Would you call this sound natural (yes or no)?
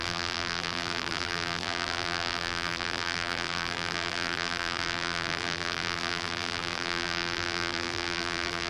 no